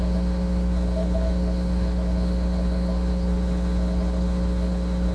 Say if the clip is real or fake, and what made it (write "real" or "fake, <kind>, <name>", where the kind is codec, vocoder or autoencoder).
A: fake, codec, HILCodec